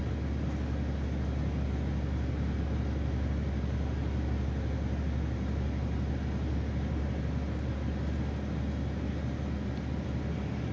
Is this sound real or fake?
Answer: real